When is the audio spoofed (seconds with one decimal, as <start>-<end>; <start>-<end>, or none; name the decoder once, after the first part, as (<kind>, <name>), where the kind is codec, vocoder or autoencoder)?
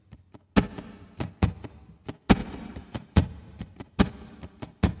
2.4-4.0 (vocoder, BigVGAN v2)